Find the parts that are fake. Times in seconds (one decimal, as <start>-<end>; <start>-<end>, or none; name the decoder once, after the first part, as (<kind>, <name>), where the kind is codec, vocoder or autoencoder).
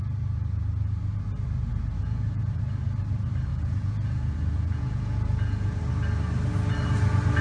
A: 1.7-2.6 (vocoder, Vocos); 3.5-5.8